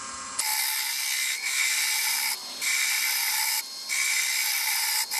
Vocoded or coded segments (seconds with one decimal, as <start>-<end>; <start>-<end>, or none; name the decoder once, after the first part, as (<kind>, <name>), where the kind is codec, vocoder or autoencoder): none